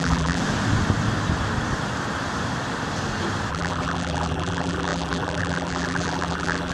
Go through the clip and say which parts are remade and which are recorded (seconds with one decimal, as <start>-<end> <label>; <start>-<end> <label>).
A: 0.0-0.4 remade; 0.4-3.5 recorded; 3.5-6.7 remade